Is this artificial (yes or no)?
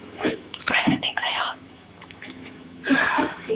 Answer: yes